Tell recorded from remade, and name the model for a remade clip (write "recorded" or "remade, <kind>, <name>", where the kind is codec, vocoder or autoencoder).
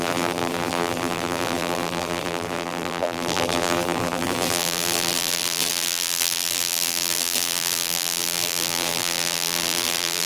remade, vocoder, BigVGAN v2